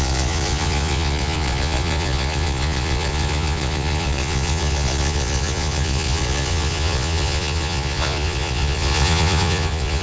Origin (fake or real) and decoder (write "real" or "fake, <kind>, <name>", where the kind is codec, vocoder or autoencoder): fake, vocoder, Vocos